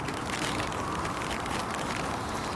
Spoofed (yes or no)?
yes